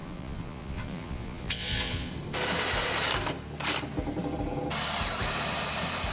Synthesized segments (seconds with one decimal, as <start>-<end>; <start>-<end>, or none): 0.0-2.1